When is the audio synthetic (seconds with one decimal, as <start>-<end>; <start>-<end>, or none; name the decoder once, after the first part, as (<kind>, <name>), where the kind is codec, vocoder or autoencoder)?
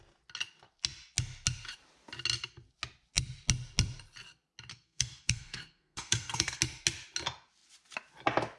4.7-6.6 (codec, SNAC)